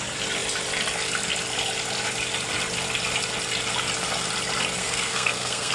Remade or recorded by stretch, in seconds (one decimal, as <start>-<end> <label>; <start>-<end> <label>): 0.0-4.8 recorded; 4.8-5.7 remade